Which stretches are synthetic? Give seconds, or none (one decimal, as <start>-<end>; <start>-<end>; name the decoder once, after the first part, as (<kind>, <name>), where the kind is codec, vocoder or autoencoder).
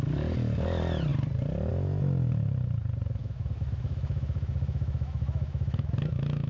3.2-6.5 (autoencoder, DAC-VAE)